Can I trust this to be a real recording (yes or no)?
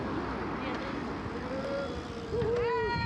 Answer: yes